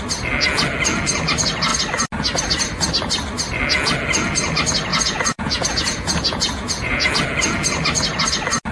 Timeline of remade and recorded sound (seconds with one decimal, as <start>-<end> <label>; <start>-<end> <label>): 0.0-4.9 recorded; 4.9-7.1 remade; 7.1-8.7 recorded